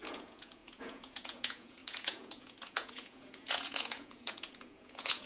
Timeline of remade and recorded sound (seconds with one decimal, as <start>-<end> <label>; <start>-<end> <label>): 0.0-5.3 remade